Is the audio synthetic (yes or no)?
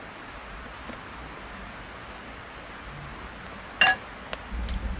no